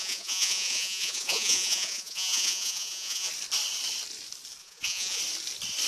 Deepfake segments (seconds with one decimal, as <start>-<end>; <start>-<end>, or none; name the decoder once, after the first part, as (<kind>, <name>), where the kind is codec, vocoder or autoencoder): 0.0-3.3 (vocoder, Vocos); 4.6-5.2